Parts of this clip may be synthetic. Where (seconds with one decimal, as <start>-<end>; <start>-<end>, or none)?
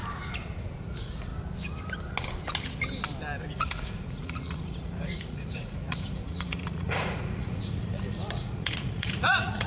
0.8-1.3; 3.5-9.7